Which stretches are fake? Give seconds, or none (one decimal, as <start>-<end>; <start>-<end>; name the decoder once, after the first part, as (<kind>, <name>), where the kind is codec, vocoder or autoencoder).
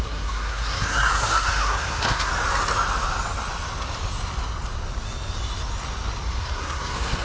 0.0-2.3 (codec, SNAC); 6.4-7.2